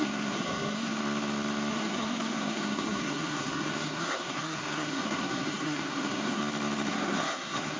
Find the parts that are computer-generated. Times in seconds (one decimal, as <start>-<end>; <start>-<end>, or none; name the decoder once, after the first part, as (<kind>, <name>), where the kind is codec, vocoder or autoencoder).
0.0-1.0 (codec, SNAC); 1.7-6.4; 6.9-7.8